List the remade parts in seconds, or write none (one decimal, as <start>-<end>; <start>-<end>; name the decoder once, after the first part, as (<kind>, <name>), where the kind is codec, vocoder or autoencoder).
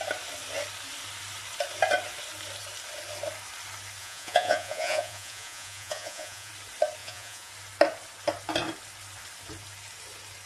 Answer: 4.0-6.5 (vocoder, Vocos); 7.0-7.5